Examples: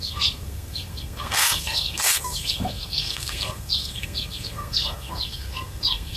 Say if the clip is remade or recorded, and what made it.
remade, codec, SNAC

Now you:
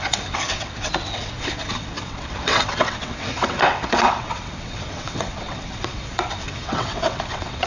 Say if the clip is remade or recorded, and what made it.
remade, vocoder, WaveNeXt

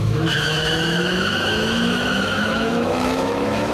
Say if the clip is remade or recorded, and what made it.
remade, autoencoder, DAC-VAE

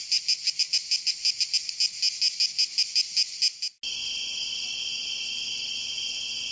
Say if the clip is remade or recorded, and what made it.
recorded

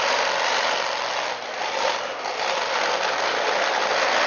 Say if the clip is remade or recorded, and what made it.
recorded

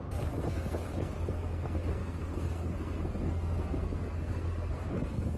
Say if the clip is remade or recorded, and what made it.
remade, codec, SNAC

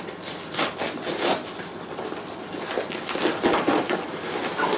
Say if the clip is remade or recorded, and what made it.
recorded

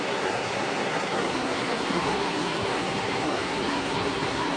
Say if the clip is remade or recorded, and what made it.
remade, codec, SNAC